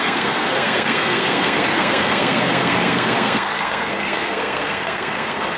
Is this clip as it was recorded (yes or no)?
no